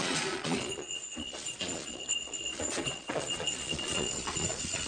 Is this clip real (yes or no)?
no